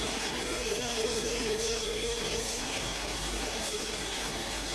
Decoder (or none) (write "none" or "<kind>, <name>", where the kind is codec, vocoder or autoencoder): codec, SNAC